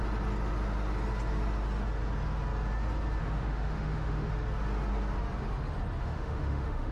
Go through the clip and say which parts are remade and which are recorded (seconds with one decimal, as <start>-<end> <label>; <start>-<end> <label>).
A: 0.0-3.2 recorded; 3.2-4.3 remade; 4.3-6.0 recorded; 6.0-6.9 remade